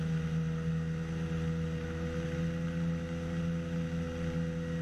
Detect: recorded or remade recorded